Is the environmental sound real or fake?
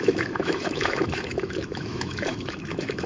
fake